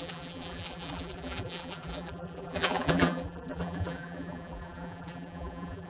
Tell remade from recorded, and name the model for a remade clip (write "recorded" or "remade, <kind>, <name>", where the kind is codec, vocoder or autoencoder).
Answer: remade, vocoder, BigVGAN v2